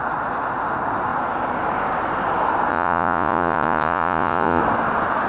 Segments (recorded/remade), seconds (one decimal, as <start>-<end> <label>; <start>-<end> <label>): 0.0-2.7 recorded; 2.7-4.6 remade; 4.6-5.3 recorded